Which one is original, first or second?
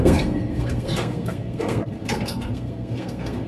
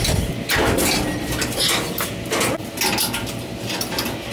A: second